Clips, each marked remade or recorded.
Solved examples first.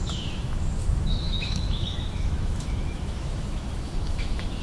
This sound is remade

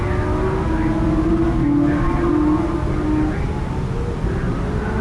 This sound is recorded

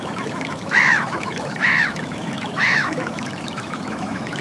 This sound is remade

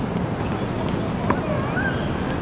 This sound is recorded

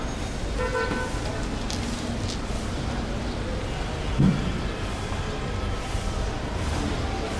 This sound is recorded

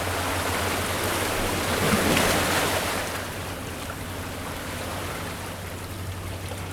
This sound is recorded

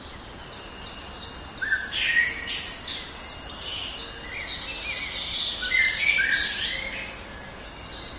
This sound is recorded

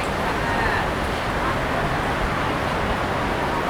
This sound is recorded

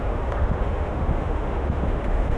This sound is remade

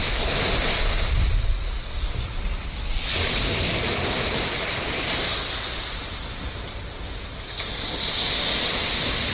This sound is recorded